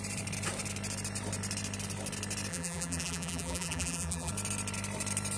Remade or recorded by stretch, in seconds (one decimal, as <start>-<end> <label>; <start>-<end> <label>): 0.0-2.5 recorded; 2.5-4.3 remade; 4.3-5.4 recorded